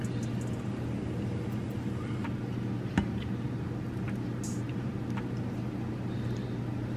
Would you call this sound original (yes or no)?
yes